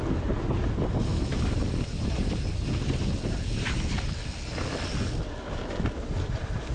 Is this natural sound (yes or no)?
yes